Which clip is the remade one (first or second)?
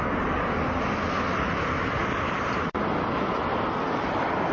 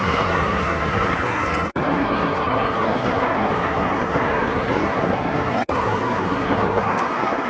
second